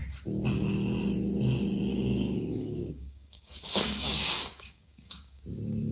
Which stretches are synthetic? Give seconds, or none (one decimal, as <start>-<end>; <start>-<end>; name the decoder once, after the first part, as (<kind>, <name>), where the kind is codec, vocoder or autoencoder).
1.9-5.4 (codec, DAC)